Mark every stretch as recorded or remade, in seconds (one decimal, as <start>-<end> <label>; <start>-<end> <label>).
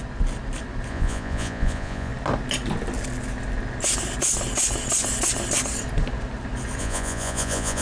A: 0.0-0.9 recorded; 0.9-2.1 remade; 2.1-6.8 recorded; 6.8-7.8 remade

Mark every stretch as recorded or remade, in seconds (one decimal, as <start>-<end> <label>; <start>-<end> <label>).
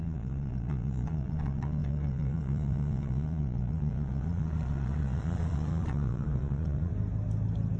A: 0.0-6.9 remade; 6.9-7.8 recorded